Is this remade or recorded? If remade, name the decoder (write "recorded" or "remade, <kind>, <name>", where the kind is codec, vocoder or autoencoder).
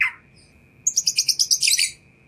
recorded